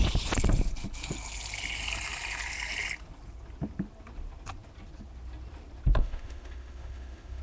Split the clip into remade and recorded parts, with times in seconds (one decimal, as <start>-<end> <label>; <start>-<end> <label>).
0.0-6.0 recorded; 6.0-7.4 remade